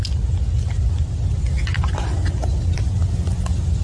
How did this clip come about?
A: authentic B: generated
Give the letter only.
A